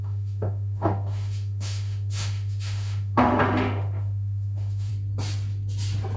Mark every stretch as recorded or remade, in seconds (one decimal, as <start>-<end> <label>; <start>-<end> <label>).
0.0-4.9 remade; 4.9-6.2 recorded